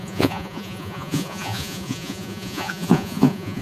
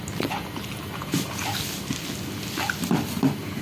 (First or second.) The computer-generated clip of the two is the first